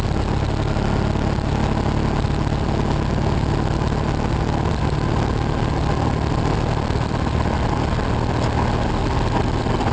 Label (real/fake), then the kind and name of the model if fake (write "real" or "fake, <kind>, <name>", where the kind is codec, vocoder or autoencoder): real